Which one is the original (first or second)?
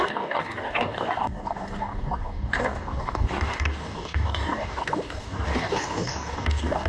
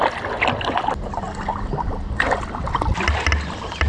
second